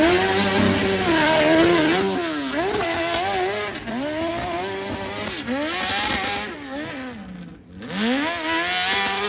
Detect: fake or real real